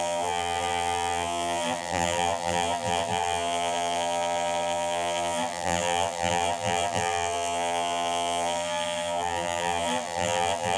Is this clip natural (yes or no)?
no